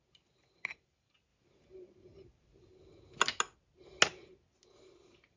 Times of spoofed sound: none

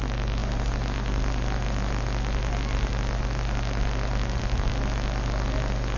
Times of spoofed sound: none

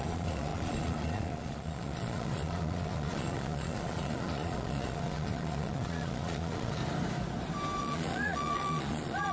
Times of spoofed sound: 0.0-6.8 (vocoder, Vocos); 7.8-9.3

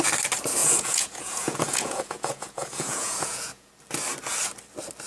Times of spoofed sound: 0.6-3.7 (vocoder, Vocos)

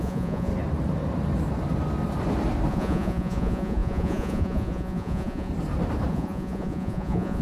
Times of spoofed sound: 0.0-0.5 (vocoder, Vocos); 2.7-5.5; 6.1-7.4

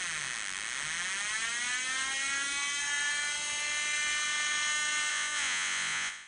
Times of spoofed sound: 5.1-6.3 (vocoder, Vocos)

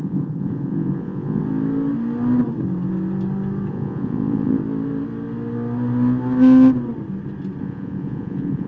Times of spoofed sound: 0.0-1.4 (vocoder, Vocos); 3.7-4.6; 7.6-8.7